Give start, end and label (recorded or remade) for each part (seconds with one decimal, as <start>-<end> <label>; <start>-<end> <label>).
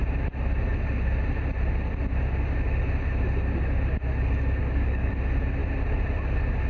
0.0-4.6 recorded; 4.6-5.1 remade; 5.1-6.7 recorded